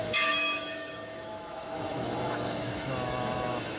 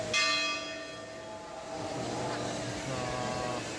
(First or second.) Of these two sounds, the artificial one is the first